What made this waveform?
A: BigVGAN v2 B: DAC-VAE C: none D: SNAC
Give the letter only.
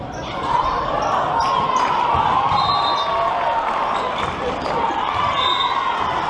A